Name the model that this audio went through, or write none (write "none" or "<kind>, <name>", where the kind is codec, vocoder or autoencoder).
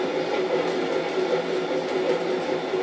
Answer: none